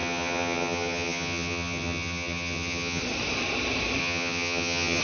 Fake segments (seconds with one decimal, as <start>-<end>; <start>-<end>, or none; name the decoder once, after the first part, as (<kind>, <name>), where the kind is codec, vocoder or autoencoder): 0.0-3.0 (vocoder, HiFi-GAN); 4.0-5.0

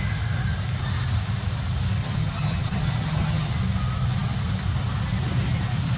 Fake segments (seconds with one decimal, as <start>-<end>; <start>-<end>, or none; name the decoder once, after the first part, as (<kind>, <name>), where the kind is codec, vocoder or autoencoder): 2.0-3.5 (vocoder, HiFi-GAN)

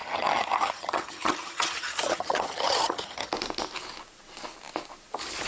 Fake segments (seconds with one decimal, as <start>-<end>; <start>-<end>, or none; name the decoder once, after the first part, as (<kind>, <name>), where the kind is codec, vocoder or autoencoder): 0.0-3.3 (vocoder, HiFi-GAN)

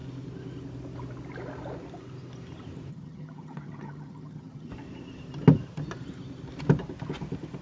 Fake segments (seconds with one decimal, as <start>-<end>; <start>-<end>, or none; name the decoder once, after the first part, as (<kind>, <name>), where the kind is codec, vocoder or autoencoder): 2.9-4.7 (vocoder, HiFi-GAN)

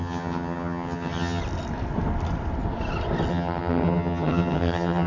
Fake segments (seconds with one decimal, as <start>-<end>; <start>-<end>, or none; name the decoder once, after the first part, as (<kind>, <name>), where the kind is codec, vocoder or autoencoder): 0.0-1.4 (vocoder, HiFi-GAN); 3.3-5.1

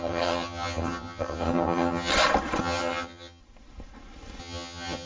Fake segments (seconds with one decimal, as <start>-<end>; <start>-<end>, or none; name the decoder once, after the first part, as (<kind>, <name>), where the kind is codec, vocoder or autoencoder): 0.0-2.1 (vocoder, HiFi-GAN); 2.6-3.4; 4.4-5.1

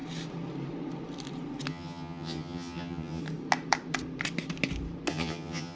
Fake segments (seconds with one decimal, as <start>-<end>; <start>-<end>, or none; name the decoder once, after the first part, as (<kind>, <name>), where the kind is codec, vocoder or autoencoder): 1.7-3.2 (vocoder, HiFi-GAN); 5.1-5.8

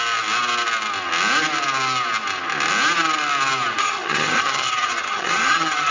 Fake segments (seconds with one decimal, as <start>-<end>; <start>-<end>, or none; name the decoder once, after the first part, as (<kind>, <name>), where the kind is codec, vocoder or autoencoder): 3.8-5.9 (vocoder, HiFi-GAN)